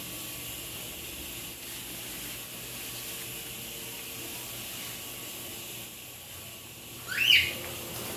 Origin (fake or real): real